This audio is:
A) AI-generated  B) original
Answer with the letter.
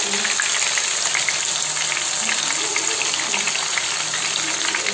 B